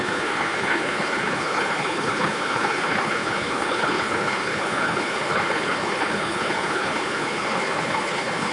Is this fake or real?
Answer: fake